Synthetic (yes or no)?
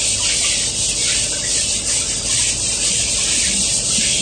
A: no